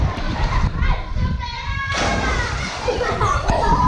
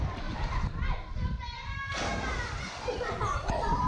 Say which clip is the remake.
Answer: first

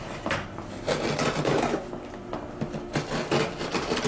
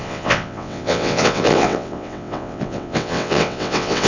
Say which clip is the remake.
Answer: second